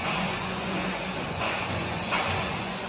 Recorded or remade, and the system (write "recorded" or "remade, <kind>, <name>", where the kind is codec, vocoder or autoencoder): remade, vocoder, Vocos